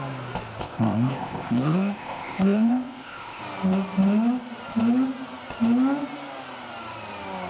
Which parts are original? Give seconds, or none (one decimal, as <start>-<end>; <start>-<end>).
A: 0.0-0.6; 3.4-7.5